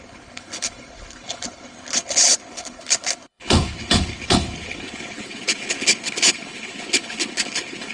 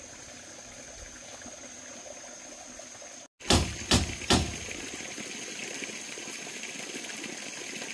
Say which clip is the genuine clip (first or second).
second